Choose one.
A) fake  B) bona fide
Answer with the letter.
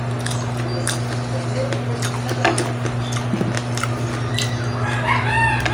B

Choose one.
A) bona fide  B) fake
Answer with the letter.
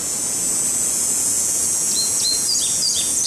B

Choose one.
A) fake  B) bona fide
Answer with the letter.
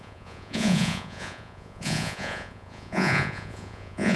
A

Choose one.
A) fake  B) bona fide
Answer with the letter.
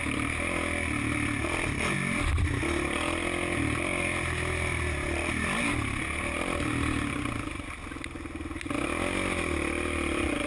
B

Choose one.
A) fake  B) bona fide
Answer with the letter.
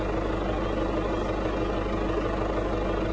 B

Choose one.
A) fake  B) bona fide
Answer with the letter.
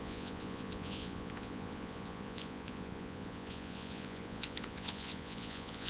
A